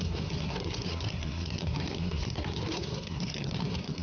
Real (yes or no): no